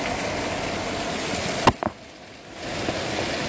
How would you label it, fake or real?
real